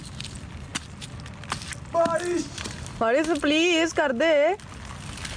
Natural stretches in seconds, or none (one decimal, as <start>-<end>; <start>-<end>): 0.0-5.4